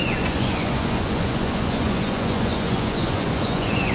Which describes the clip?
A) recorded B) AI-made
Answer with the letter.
B